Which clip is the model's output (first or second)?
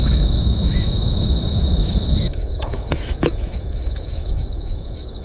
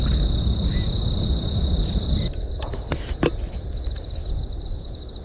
first